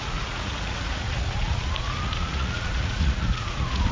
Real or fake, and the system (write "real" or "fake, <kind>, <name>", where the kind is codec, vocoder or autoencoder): fake, vocoder, Vocos